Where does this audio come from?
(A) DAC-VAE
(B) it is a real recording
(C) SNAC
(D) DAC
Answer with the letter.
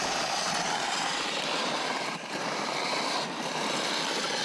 B